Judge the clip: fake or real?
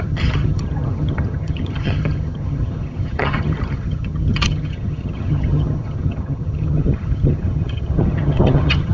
fake